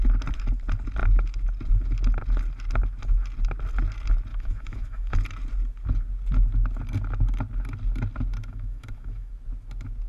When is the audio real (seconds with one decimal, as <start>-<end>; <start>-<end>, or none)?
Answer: 0.0-4.3; 5.1-8.4; 9.3-10.1

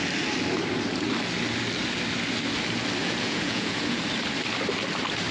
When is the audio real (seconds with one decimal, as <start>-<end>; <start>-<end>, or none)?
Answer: 0.0-3.0; 4.0-5.3

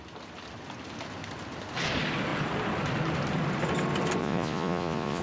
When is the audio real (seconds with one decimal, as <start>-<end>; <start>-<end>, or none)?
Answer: 0.0-4.2